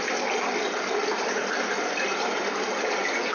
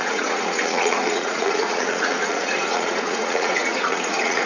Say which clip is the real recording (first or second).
first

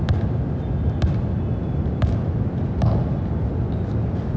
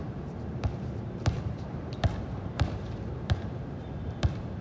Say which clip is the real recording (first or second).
first